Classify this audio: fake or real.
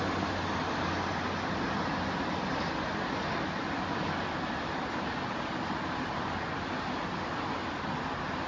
real